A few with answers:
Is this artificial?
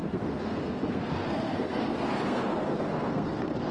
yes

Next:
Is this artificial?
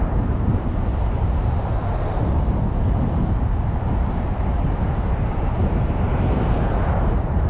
yes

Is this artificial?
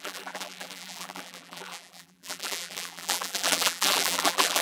yes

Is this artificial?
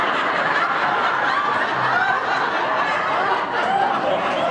no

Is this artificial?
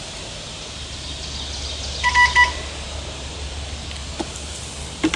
no